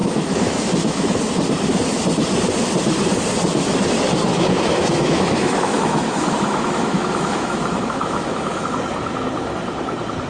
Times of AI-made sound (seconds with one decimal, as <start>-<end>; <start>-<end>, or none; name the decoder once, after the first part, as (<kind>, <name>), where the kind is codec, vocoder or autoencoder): 0.0-1.2 (autoencoder, DAC-VAE); 4.3-8.6